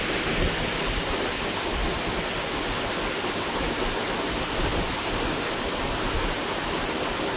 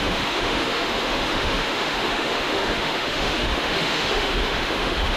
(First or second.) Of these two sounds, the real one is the first